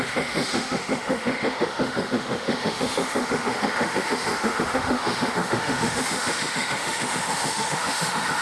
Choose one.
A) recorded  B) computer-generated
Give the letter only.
B